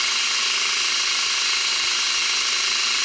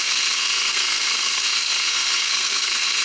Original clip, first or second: first